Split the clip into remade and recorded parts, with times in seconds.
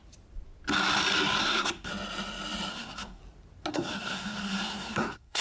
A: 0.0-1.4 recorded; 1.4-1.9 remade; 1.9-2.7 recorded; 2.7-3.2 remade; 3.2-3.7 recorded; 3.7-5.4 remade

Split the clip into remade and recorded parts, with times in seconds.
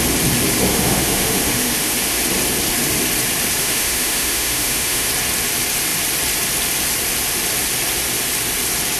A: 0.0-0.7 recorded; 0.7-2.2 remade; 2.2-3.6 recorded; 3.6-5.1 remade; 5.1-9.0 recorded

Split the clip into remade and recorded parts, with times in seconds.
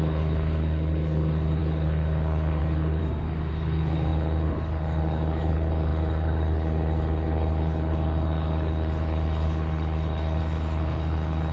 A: 0.0-3.0 remade; 3.0-3.5 recorded; 3.5-11.5 remade